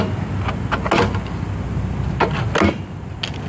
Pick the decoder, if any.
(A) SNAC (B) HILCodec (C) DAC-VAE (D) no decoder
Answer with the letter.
D